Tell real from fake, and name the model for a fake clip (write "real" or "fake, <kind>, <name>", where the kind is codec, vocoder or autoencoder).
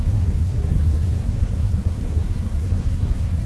fake, codec, SNAC